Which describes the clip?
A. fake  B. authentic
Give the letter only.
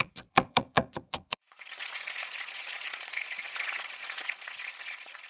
A